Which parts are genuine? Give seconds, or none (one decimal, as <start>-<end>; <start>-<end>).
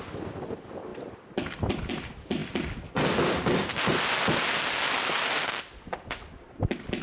0.0-7.0